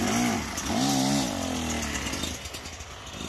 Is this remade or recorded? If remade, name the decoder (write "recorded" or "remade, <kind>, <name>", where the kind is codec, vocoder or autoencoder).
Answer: recorded